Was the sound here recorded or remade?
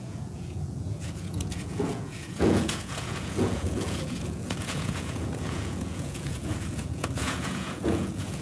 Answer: remade